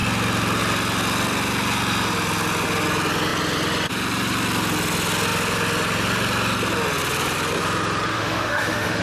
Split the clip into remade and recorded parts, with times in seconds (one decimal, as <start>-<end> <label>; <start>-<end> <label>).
0.0-8.1 recorded; 8.1-9.0 remade